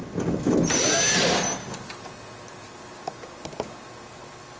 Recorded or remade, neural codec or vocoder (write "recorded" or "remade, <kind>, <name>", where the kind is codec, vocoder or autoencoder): recorded